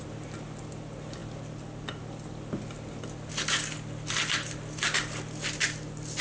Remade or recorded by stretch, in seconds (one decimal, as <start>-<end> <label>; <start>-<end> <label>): 0.0-6.2 recorded